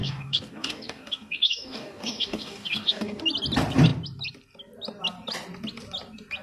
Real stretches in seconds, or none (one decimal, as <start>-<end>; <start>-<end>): 3.2-6.4